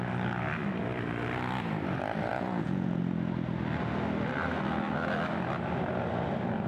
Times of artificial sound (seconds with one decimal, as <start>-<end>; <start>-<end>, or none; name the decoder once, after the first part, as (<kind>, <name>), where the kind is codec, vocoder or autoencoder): 2.3-3.0 (vocoder, Vocos)